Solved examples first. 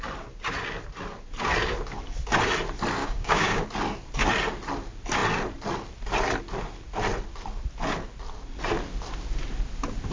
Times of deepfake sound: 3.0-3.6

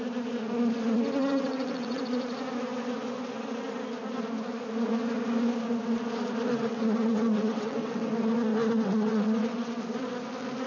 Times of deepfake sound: 1.2-2.0; 6.5-8.1; 8.5-9.8

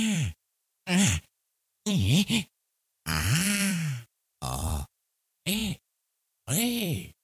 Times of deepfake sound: 0.0-7.2

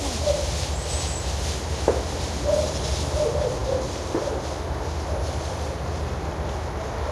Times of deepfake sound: none

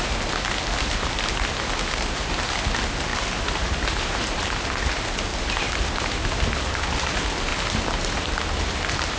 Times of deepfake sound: 3.1-4.5; 7.5-8.3